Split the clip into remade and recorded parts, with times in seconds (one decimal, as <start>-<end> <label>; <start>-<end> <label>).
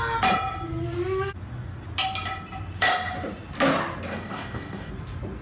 0.0-4.1 recorded; 4.1-4.9 remade; 4.9-5.4 recorded